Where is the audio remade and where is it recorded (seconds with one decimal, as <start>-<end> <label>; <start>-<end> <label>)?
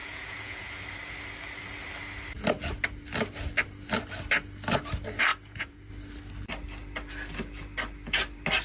0.0-0.8 remade; 0.8-5.3 recorded; 5.3-5.9 remade; 5.9-8.6 recorded